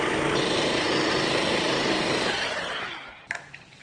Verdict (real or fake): fake